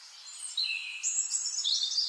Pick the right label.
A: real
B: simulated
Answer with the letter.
A